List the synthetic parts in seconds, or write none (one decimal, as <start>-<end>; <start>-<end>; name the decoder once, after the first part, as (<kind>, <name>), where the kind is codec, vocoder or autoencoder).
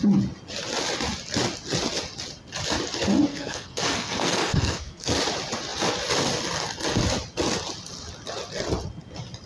3.3-5.1 (codec, SNAC)